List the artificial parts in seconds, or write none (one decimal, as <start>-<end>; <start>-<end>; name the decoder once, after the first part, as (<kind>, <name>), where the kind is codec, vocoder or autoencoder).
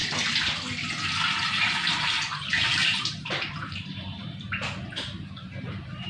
1.4-6.1 (vocoder, BigVGAN v2)